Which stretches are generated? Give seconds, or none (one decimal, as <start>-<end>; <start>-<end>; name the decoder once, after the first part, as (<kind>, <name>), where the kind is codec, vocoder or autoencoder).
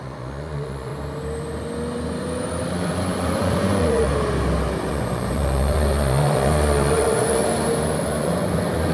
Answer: 0.0-0.9 (vocoder, Vocos); 2.7-4.1; 4.9-7.4; 8.0-8.9